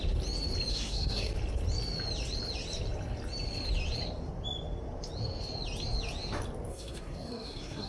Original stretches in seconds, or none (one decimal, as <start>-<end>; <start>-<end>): 0.0-0.7; 1.3-6.7

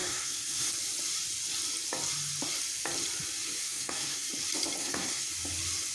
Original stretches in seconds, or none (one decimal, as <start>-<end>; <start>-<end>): 0.7-3.6; 4.3-4.8; 5.3-5.9

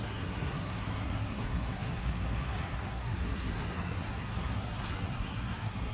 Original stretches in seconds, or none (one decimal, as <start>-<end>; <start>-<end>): none

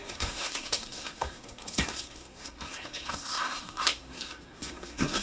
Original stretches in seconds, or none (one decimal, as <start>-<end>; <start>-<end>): none

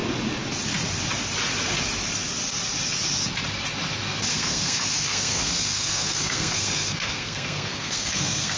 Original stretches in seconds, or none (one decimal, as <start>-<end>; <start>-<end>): 0.0-4.3

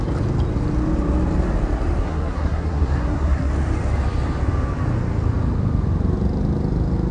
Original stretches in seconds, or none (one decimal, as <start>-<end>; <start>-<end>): 0.0-2.0; 3.5-7.1

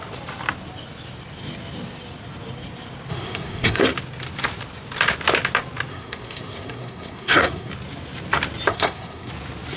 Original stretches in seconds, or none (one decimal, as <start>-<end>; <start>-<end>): 0.0-3.1; 3.8-5.9; 7.7-8.7; 9.3-9.8